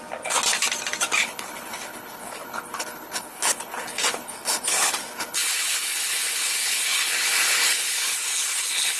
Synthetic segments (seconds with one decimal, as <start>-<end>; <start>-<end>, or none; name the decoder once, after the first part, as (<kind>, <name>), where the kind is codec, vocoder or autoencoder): 1.2-9.0 (codec, HILCodec)